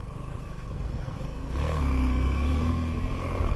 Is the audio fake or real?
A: fake